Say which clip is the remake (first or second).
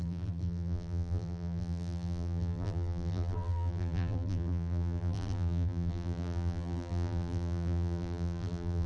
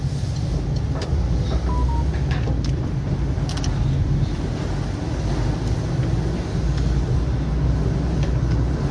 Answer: first